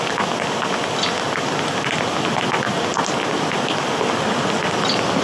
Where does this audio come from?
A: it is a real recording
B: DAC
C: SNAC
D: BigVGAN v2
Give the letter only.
A